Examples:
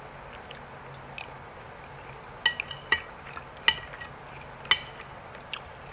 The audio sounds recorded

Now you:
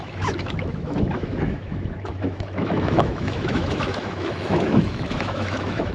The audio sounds remade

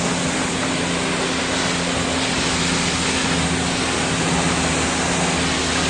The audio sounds recorded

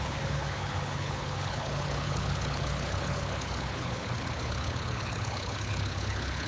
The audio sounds remade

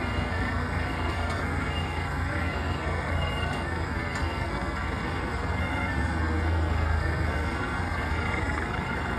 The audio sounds remade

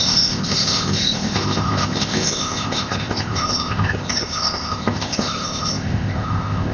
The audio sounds remade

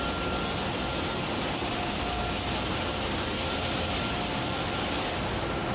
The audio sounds recorded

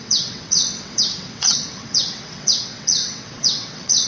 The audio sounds remade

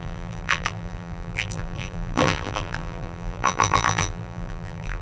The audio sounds remade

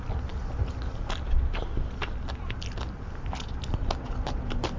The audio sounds recorded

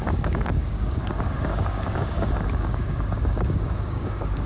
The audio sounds remade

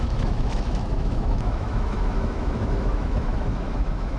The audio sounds remade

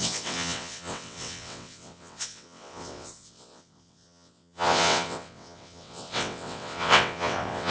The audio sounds remade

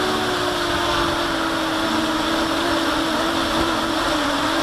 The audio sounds recorded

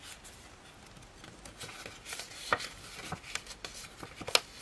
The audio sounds recorded